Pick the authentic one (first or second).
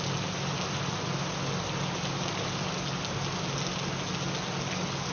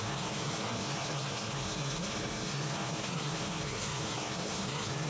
first